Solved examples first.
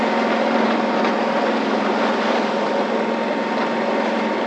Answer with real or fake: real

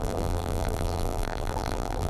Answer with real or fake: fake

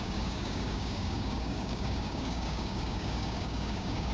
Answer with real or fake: fake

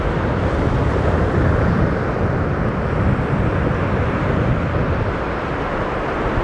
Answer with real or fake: real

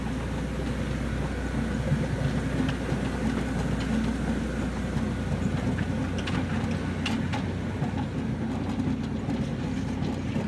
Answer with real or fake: real